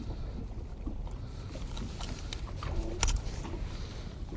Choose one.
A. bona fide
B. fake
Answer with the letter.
A